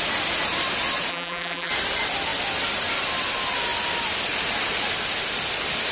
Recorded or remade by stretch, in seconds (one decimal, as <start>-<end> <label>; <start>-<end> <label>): 0.0-1.1 recorded; 1.1-1.7 remade; 1.7-5.9 recorded